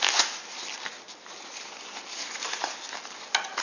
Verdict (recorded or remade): recorded